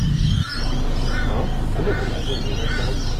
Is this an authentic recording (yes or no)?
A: yes